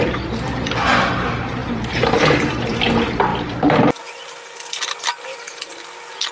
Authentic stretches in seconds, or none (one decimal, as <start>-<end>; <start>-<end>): 0.0-6.3